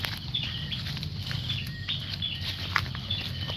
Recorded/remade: recorded